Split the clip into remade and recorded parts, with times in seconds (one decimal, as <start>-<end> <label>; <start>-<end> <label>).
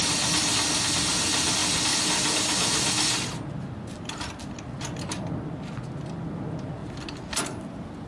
0.0-8.1 recorded